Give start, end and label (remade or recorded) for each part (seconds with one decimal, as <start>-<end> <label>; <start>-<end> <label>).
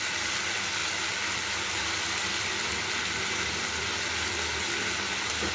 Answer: 0.0-5.5 recorded